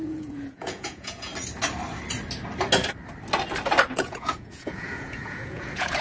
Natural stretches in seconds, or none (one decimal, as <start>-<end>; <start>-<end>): 1.3-3.9